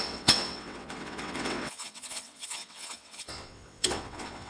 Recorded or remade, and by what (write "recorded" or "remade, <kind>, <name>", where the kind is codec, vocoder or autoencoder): remade, vocoder, WaveNeXt